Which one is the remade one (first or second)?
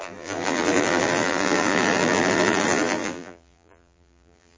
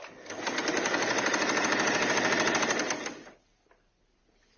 first